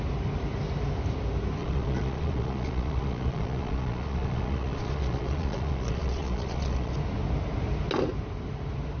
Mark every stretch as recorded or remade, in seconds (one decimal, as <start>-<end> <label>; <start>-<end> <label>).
0.0-1.6 recorded; 1.6-6.9 remade; 6.9-9.0 recorded